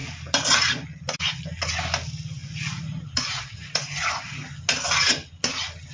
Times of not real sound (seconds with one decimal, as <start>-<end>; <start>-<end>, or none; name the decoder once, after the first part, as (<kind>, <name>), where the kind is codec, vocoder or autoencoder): 2.4-4.1 (vocoder, Vocos)